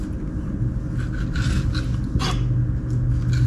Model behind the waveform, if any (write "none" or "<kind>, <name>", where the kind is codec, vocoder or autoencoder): none